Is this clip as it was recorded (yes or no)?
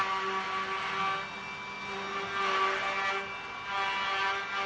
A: yes